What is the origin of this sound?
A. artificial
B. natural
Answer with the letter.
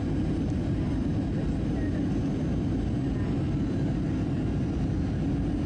B